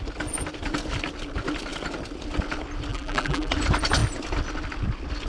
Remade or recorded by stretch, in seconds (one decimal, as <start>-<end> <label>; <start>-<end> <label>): 0.0-2.9 recorded; 2.9-3.5 remade; 3.5-5.3 recorded